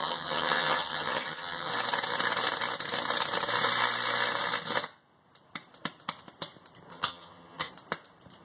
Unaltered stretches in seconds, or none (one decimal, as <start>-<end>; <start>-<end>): 1.7-6.9; 7.7-8.4